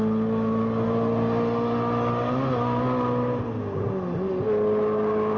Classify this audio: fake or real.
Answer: real